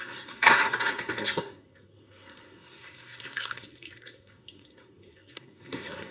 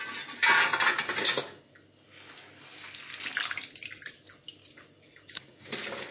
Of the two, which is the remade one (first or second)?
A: first